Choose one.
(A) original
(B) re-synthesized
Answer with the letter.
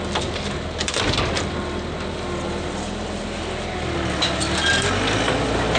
A